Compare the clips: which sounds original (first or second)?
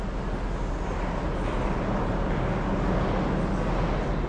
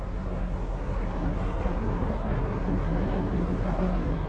first